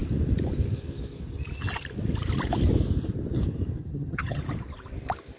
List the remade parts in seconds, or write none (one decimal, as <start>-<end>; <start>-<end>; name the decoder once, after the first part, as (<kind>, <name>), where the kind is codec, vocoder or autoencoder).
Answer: 3.8-4.4 (vocoder, HiFi-GAN)